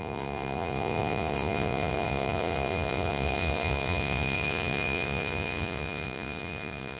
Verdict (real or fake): fake